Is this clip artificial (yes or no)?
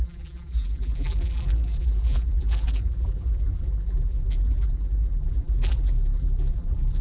yes